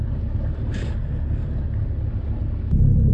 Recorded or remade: recorded